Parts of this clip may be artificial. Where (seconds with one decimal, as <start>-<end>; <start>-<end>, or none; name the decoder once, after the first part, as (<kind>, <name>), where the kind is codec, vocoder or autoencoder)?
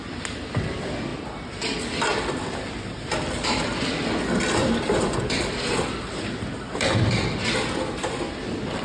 1.1-6.1 (vocoder, BigVGAN v2)